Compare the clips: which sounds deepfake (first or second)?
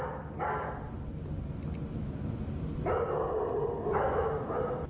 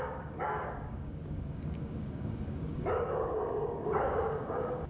second